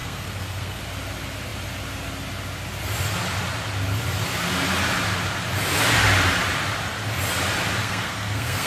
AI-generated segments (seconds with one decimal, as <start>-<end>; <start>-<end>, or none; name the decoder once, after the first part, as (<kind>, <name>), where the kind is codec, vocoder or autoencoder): 0.0-0.8 (codec, SNAC); 7.8-8.7